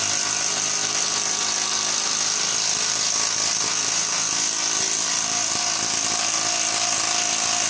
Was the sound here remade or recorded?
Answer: recorded